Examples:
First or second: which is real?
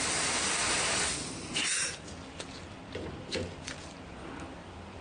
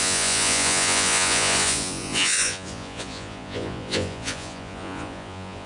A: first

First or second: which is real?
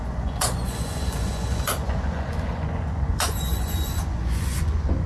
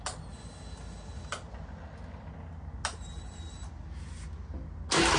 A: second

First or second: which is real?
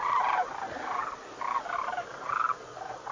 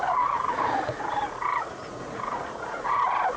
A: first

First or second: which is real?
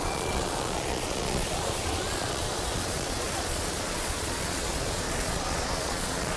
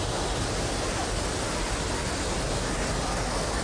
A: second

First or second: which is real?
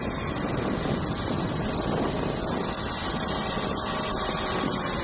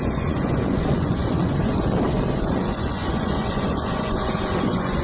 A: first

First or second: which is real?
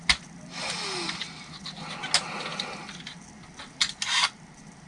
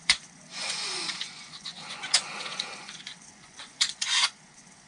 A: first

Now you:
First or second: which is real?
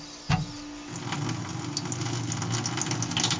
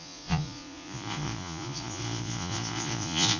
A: first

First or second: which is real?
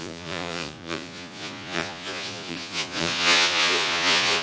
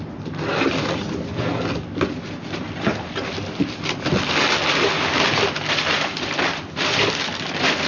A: second